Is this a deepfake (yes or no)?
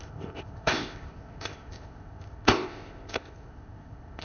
yes